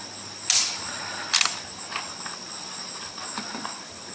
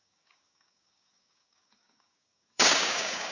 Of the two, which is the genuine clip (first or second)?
first